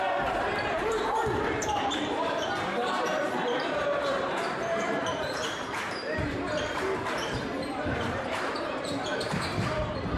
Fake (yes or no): yes